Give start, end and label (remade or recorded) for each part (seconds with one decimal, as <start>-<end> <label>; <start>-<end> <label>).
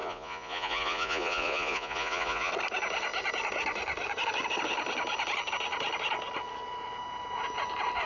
0.0-2.5 remade; 2.5-8.1 recorded